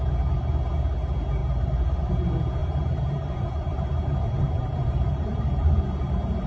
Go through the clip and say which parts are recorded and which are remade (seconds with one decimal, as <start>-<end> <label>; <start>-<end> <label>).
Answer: 0.0-1.4 recorded; 1.4-2.1 remade; 2.1-2.6 recorded; 2.6-6.5 remade